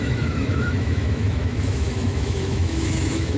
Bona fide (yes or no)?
no